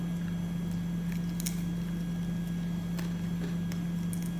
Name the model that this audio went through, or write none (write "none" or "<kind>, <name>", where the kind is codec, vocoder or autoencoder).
none